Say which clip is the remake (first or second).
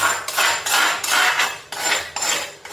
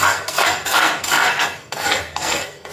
second